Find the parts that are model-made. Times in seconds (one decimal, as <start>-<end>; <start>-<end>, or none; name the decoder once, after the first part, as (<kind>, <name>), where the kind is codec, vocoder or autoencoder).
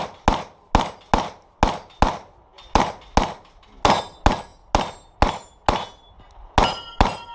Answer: none